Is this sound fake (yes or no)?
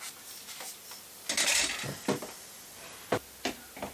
no